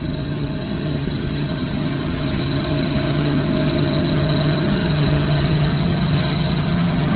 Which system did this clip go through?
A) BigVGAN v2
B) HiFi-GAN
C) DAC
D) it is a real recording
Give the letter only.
B